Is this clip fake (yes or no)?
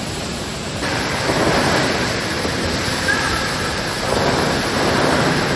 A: yes